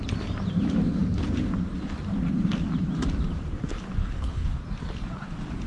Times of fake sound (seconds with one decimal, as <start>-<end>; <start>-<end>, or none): 4.0-4.6